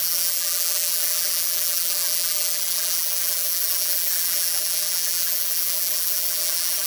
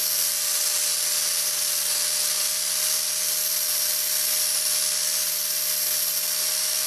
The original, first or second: second